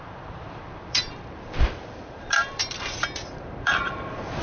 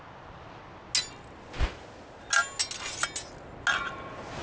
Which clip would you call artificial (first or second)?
first